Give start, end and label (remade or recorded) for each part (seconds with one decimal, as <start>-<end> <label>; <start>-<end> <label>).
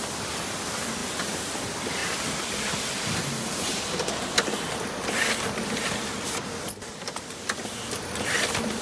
0.0-8.8 remade